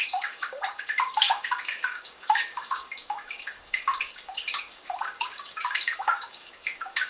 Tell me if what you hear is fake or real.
fake